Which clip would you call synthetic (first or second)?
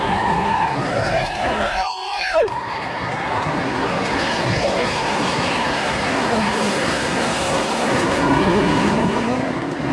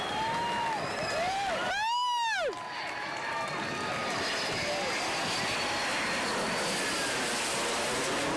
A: first